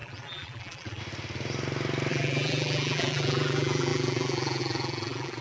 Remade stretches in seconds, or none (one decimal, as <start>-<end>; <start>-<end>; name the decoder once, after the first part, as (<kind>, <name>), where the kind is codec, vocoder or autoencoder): 0.0-1.0 (vocoder, BigVGAN v2); 2.1-5.4